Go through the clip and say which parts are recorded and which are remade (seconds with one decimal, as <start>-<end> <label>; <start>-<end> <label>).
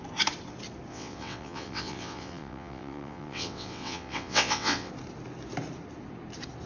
0.0-0.9 recorded; 0.9-4.9 remade; 4.9-6.7 recorded